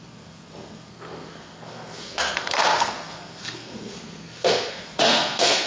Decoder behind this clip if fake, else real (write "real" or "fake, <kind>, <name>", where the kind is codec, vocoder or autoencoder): fake, codec, SNAC